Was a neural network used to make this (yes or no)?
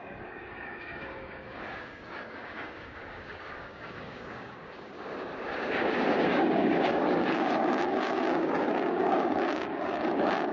yes